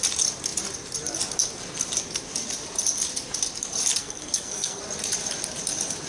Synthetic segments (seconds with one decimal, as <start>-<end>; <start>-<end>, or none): 4.0-4.8